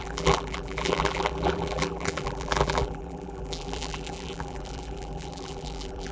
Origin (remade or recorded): remade